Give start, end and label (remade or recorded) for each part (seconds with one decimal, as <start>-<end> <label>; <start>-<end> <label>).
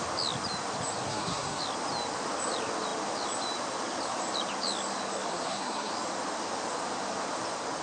0.0-1.1 recorded; 1.1-1.6 remade; 1.6-5.3 recorded; 5.3-5.9 remade; 5.9-7.8 recorded